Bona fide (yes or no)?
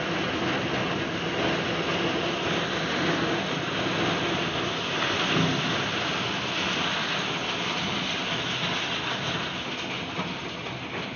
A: yes